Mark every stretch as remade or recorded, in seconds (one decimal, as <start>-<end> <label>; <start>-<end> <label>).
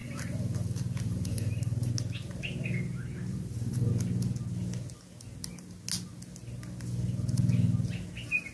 0.0-1.9 remade; 1.9-3.3 recorded; 3.3-3.9 remade; 3.9-8.5 recorded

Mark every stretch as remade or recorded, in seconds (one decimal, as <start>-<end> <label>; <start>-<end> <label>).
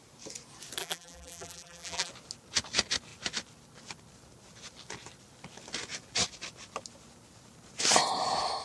0.0-0.8 recorded; 0.8-2.1 remade; 2.1-8.6 recorded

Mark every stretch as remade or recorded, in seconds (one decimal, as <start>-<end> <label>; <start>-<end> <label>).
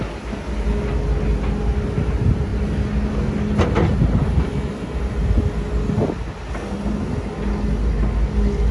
0.0-8.7 recorded